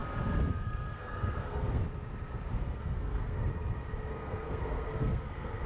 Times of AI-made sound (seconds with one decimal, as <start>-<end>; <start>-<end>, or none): 0.5-1.8; 2.5-3.5; 4.1-5.7